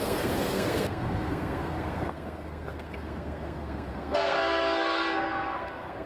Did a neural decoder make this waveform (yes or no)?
yes